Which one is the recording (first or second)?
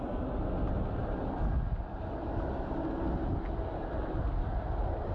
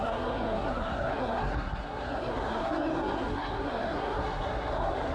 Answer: first